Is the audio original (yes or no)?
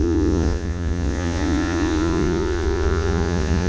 no